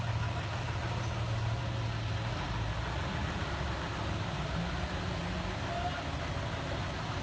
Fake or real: real